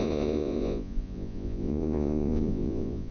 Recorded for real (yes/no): no